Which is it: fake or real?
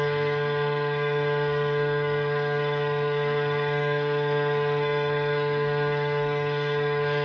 fake